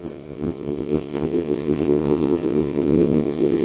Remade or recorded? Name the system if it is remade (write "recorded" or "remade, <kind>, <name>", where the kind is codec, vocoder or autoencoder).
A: remade, vocoder, WaveNeXt